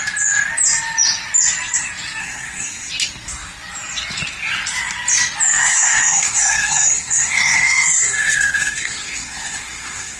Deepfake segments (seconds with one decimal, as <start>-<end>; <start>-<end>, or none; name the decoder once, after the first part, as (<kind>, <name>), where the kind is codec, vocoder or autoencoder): 2.2-2.9 (codec, SNAC); 5.6-10.2